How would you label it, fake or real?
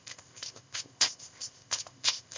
fake